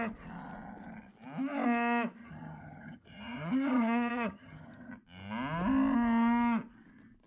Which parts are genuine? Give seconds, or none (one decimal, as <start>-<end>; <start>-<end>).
0.0-2.2; 4.9-7.3